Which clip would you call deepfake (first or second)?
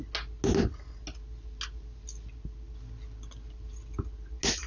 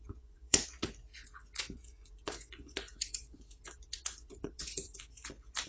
second